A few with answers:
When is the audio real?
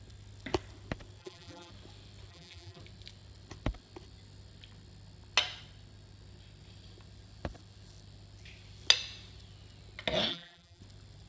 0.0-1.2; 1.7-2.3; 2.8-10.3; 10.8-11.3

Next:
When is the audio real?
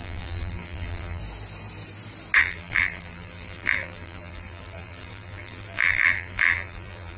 1.2-2.4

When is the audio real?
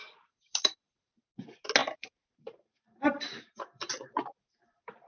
1.4-1.8